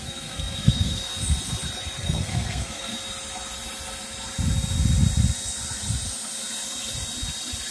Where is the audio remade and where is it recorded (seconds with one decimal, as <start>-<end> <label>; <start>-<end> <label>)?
0.0-1.1 remade; 1.1-2.0 recorded; 2.0-2.9 remade; 2.9-7.7 recorded